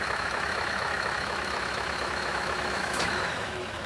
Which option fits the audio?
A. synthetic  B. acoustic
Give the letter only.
A